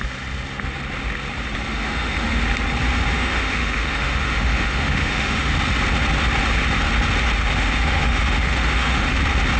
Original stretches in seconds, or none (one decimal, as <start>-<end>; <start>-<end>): 0.0-1.7; 2.4-3.1; 5.5-7.4; 9.2-9.6